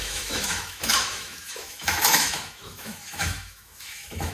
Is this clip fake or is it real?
fake